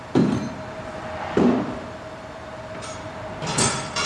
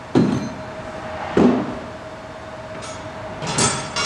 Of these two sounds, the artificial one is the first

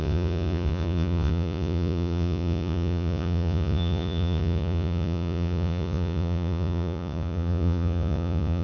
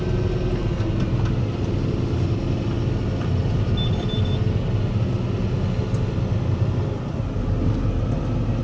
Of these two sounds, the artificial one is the first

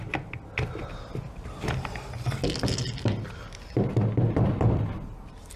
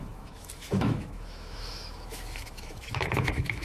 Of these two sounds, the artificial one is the second